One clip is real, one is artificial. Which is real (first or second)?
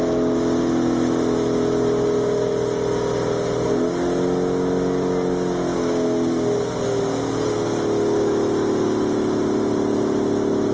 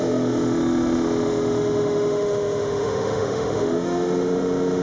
first